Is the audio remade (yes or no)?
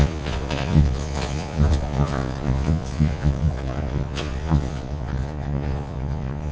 yes